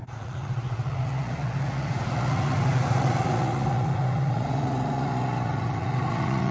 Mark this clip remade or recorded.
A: remade